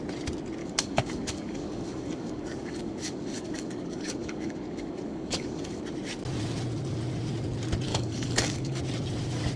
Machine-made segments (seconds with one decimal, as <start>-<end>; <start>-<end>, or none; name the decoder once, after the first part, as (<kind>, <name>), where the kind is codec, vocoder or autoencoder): 0.6-5.8 (codec, DAC); 7.9-8.8